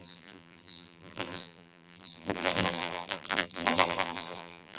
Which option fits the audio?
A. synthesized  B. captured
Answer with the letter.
A